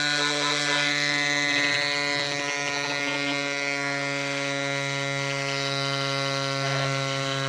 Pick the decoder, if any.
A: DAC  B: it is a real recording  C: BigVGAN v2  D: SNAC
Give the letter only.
B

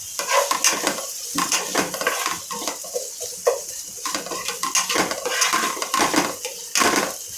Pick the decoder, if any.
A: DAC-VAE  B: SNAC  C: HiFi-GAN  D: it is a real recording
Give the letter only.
D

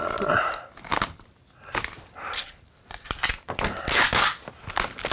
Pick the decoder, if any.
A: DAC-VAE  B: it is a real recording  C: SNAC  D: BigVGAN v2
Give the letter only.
B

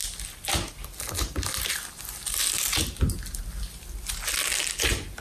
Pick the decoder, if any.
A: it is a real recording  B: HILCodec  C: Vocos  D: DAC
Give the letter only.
A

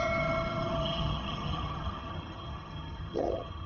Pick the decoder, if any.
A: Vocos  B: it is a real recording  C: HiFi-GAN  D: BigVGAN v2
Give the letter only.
C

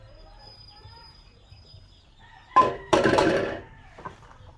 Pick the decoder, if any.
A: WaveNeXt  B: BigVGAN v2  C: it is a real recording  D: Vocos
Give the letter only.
B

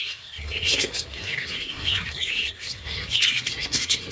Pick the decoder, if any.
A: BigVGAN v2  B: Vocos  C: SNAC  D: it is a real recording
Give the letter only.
C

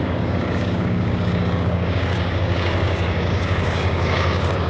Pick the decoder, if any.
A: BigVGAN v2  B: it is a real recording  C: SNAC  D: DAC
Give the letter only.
D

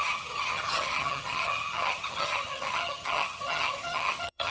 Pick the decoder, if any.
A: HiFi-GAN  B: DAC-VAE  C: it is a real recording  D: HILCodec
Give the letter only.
A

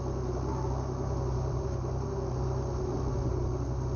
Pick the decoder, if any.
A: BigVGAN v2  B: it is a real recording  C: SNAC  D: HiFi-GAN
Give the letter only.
A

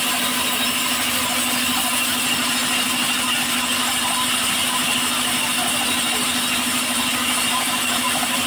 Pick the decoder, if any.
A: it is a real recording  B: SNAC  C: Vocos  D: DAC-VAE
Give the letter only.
A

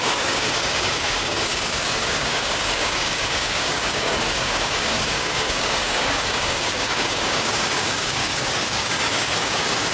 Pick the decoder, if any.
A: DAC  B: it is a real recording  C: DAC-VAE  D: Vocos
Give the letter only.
A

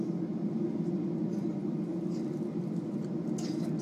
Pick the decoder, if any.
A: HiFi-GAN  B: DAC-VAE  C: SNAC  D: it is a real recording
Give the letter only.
D